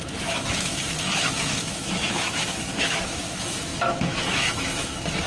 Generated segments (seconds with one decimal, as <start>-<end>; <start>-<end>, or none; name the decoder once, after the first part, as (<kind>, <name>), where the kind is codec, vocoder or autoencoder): 0.0-5.3 (autoencoder, DAC-VAE)